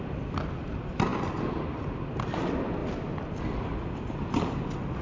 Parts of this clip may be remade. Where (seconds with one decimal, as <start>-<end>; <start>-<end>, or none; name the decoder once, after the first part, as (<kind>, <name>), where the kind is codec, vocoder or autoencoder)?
none